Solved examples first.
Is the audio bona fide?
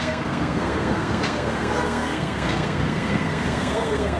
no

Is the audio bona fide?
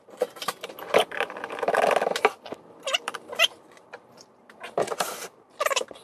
no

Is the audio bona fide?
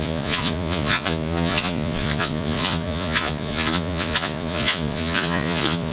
no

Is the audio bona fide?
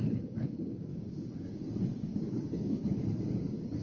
no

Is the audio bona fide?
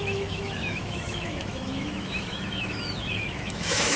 no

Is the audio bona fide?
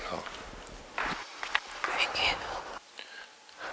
yes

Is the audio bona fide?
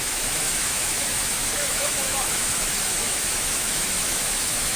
no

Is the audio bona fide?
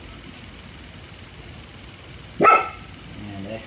yes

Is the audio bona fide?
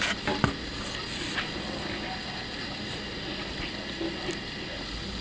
yes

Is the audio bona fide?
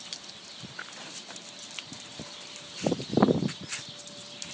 yes